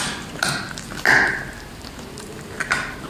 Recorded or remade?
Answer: recorded